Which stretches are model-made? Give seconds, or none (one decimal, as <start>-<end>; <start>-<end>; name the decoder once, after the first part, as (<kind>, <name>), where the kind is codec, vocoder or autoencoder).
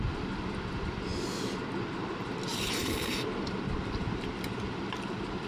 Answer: 2.5-4.3 (vocoder, BigVGAN v2)